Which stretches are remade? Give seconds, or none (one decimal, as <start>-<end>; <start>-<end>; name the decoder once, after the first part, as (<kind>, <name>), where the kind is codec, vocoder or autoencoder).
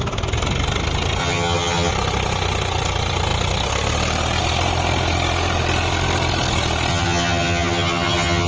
1.2-1.9 (vocoder, HiFi-GAN); 6.9-8.5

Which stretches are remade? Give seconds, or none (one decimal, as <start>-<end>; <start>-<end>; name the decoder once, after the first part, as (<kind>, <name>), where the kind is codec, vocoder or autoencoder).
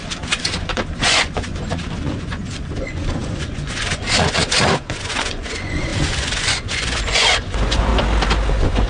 0.0-7.9 (vocoder, Vocos); 8.5-8.9